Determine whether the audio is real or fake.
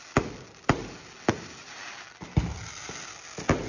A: real